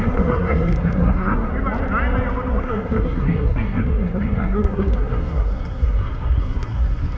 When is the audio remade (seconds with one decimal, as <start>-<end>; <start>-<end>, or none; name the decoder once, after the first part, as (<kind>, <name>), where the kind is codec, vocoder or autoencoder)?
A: 0.0-1.5 (codec, SNAC); 2.6-7.2